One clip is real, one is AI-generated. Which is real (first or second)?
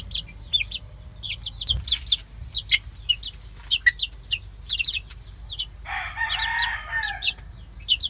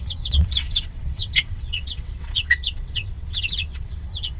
first